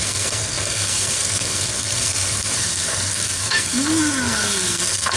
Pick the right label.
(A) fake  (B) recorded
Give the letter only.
A